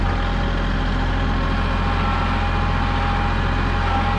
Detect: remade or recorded recorded